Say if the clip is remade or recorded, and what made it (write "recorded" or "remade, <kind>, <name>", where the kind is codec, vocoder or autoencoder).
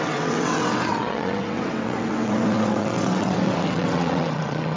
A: remade, vocoder, WaveNeXt